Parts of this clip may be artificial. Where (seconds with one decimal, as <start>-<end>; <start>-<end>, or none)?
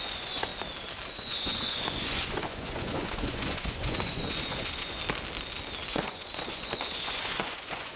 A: 0.0-0.5; 1.1-5.0; 5.9-8.0